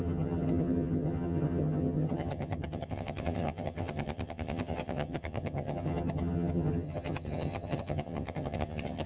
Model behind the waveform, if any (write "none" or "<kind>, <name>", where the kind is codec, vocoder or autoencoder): vocoder, HiFi-GAN